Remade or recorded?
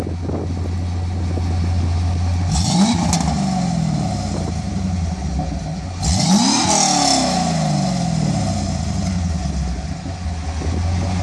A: recorded